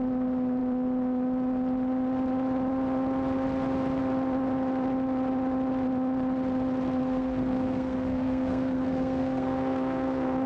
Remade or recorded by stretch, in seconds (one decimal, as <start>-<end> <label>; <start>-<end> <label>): 0.0-7.0 recorded; 7.0-10.5 remade